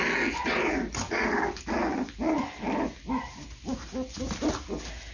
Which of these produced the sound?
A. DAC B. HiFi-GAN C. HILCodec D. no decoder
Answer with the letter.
D